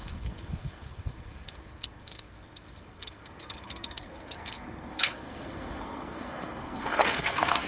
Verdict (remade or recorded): remade